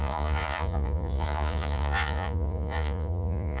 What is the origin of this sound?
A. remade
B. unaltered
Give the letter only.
A